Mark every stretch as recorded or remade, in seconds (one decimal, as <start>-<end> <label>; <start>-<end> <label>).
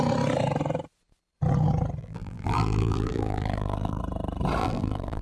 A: 0.0-2.0 recorded; 2.0-4.0 remade; 4.0-4.6 recorded; 4.6-5.2 remade